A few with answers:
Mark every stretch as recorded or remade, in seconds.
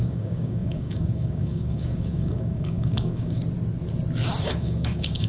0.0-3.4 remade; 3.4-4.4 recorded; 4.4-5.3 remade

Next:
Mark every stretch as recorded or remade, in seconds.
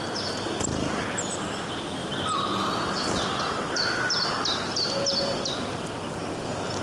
0.0-6.8 recorded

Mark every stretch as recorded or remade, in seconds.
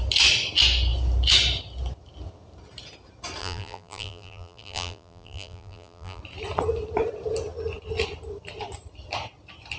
0.0-3.4 recorded; 3.4-6.2 remade; 6.2-9.8 recorded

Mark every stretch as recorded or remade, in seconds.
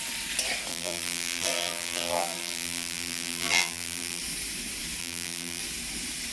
0.0-0.7 recorded; 0.7-4.2 remade; 4.2-5.0 recorded; 5.0-5.6 remade; 5.6-6.3 recorded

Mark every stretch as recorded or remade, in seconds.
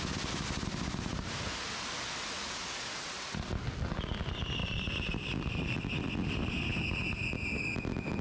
0.0-1.1 recorded; 1.1-1.6 remade; 1.6-2.6 recorded; 2.6-3.5 remade; 3.5-4.6 recorded; 4.6-5.9 remade; 5.9-8.2 recorded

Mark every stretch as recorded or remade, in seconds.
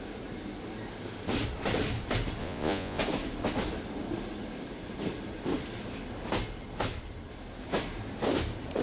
0.0-2.4 recorded; 2.4-3.0 remade; 3.0-8.8 recorded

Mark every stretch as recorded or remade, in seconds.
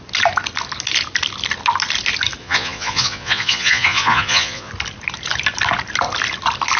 0.0-2.4 recorded; 2.4-4.7 remade; 4.7-6.8 recorded